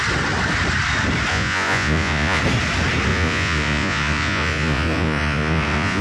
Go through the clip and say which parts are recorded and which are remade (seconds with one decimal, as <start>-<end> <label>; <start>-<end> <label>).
0.0-1.3 recorded; 1.3-2.4 remade; 2.4-3.1 recorded; 3.1-6.0 remade

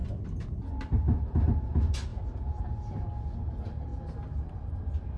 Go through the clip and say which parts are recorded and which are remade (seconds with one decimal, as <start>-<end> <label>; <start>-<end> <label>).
0.0-5.2 recorded

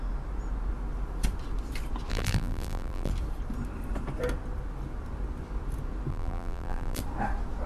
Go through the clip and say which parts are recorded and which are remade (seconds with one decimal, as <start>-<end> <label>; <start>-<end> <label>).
0.0-2.1 recorded; 2.1-3.1 remade; 3.1-6.1 recorded; 6.1-7.0 remade; 7.0-7.7 recorded

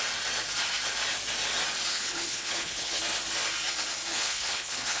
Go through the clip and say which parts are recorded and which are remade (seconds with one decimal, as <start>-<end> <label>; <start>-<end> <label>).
0.0-1.9 recorded; 1.9-3.0 remade; 3.0-4.1 recorded; 4.1-5.0 remade